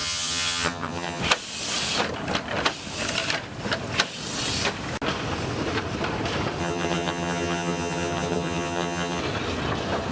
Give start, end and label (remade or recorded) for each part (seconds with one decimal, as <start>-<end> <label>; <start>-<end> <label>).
0.0-1.2 remade; 1.2-6.6 recorded; 6.6-9.2 remade; 9.2-10.1 recorded